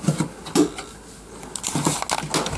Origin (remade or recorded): recorded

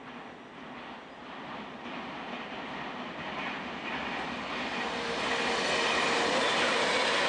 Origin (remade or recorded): recorded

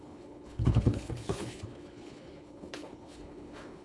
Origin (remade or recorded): remade